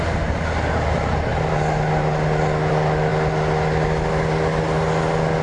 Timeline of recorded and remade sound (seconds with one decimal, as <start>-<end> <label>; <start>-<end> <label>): 0.0-5.4 recorded